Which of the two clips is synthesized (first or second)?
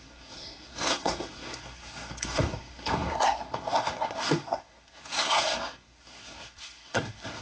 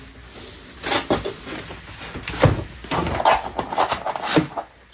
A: first